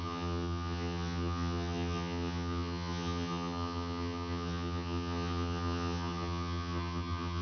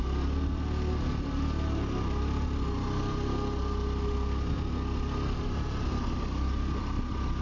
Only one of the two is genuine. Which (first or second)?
second